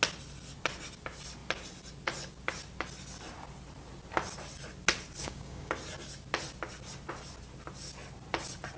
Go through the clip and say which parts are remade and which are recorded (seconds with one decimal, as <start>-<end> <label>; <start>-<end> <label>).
0.0-5.2 recorded; 5.2-5.7 remade; 5.7-8.8 recorded